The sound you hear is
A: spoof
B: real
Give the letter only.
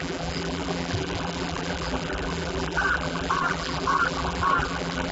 A